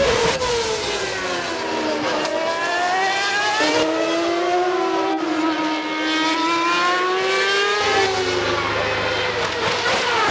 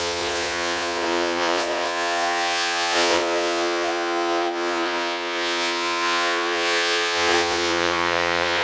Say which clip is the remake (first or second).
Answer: second